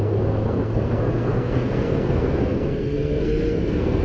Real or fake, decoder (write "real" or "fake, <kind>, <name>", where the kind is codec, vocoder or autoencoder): fake, codec, SNAC